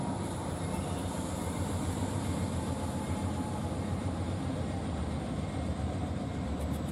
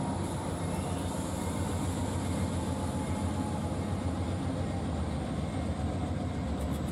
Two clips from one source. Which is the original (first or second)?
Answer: second